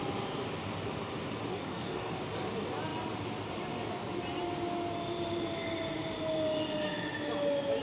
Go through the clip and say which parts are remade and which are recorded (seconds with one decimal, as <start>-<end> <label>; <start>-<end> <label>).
0.0-1.5 recorded; 1.5-2.1 remade; 2.1-7.8 recorded